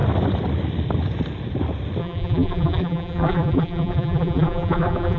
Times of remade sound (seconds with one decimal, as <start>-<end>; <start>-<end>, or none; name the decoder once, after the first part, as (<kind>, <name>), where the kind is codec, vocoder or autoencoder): 2.0-5.2 (vocoder, BigVGAN v2)

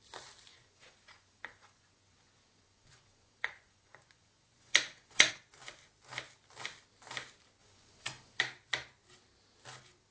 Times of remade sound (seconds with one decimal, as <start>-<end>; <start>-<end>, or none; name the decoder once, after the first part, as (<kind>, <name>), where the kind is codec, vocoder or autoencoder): 0.5-5.3 (vocoder, Vocos); 7.6-8.4

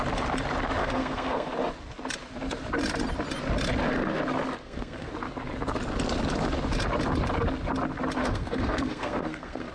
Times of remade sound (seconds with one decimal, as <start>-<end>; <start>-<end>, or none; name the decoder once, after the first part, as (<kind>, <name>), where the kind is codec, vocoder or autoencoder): 0.8-1.5 (codec, SNAC); 4.6-5.1; 8.2-9.7

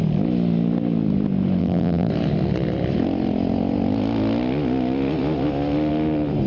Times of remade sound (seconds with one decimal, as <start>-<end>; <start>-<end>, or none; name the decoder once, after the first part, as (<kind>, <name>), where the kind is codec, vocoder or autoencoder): 1.6-2.1 (vocoder, BigVGAN v2)